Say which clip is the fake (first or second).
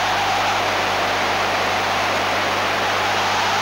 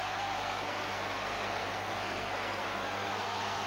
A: second